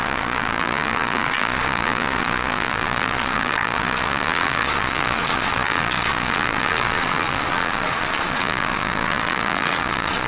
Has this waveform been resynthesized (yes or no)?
yes